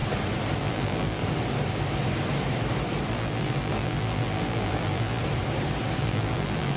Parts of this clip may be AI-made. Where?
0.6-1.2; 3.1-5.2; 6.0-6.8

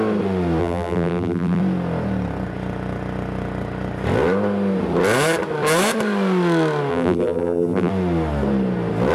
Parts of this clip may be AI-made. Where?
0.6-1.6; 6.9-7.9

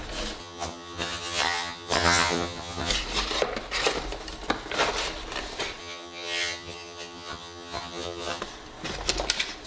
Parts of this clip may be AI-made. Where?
0.4-2.9; 5.8-8.4

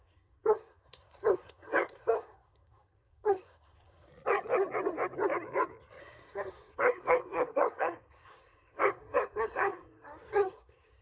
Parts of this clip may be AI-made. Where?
0.0-4.1; 6.0-11.0

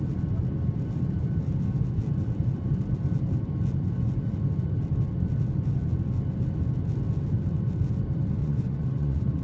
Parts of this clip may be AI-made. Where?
8.4-9.4

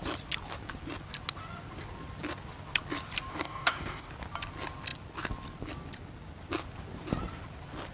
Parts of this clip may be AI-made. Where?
3.3-4.1

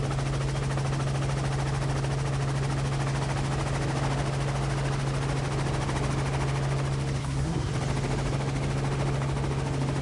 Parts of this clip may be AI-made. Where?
7.2-7.7

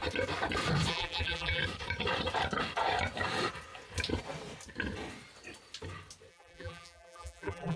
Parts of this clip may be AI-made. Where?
0.9-1.6; 6.3-7.8